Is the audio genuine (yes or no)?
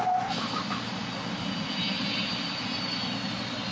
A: yes